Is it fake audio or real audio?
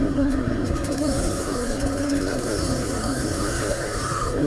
fake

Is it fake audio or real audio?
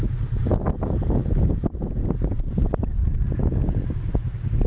real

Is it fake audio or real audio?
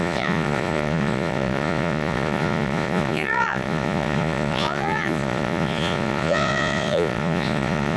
fake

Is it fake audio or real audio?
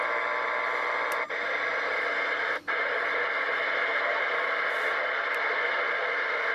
real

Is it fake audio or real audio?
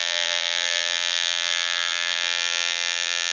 fake